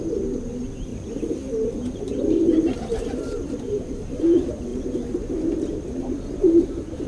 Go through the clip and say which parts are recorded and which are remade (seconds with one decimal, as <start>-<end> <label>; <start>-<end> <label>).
0.0-0.9 recorded; 0.9-4.2 remade; 4.2-4.7 recorded; 4.7-7.1 remade